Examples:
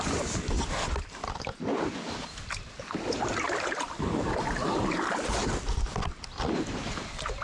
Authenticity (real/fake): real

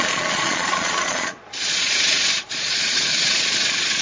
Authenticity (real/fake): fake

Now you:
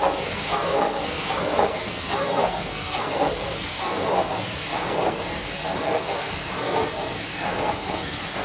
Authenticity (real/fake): fake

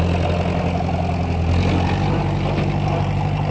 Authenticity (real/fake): real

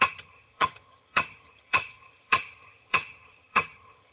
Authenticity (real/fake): fake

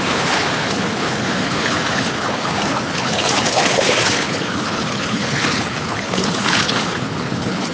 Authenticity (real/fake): fake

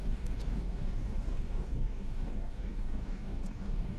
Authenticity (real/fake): fake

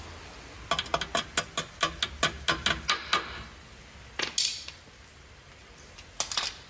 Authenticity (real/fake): real